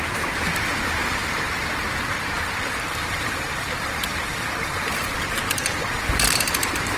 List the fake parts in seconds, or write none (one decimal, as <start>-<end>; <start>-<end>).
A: 0.0-7.0